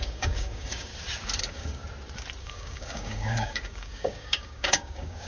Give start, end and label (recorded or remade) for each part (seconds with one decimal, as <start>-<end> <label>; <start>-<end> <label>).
0.0-0.9 remade; 0.9-1.4 recorded; 1.4-1.8 remade; 1.8-2.4 recorded; 2.4-5.3 remade